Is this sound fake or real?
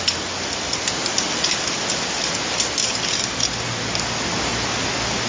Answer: real